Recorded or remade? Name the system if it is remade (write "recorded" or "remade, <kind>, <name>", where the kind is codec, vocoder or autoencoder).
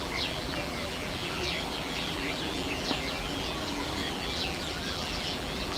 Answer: remade, vocoder, BigVGAN v2